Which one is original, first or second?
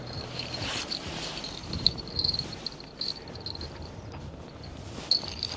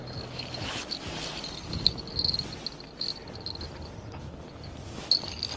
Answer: second